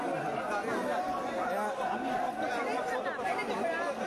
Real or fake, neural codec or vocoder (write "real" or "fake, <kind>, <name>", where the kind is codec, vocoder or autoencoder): real